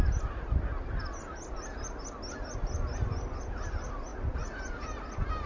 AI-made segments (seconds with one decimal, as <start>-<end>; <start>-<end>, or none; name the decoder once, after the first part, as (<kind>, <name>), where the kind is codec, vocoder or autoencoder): none